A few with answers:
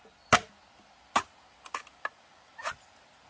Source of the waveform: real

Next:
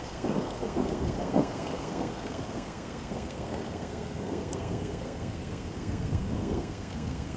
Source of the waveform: fake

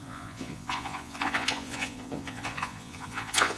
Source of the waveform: fake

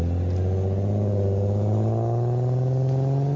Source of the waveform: real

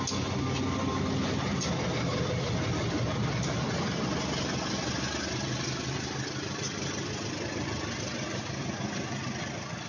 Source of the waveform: real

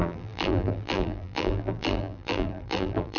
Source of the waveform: fake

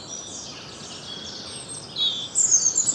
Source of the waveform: real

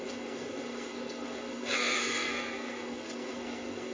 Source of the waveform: fake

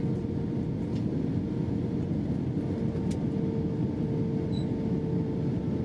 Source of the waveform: real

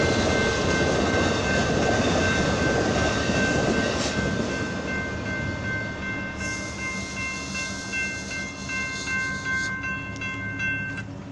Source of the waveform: real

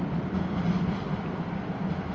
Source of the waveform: real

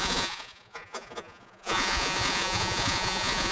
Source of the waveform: fake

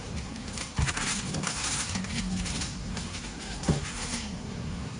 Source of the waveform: fake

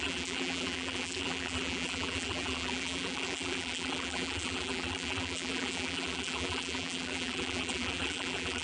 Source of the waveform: fake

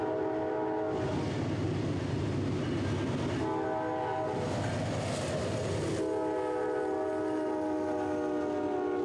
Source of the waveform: real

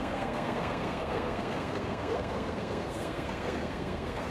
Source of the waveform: fake